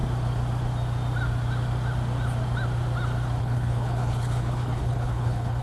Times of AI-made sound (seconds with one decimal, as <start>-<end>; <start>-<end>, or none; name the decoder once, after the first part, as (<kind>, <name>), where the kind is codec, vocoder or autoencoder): 3.4-5.6 (codec, HILCodec)